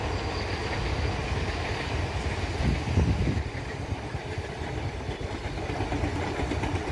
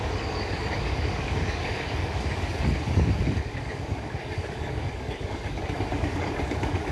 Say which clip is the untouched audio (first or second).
first